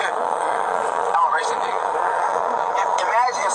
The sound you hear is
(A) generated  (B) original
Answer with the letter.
A